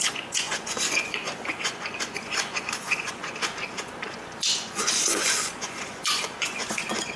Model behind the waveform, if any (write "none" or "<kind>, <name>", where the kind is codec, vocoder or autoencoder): vocoder, Vocos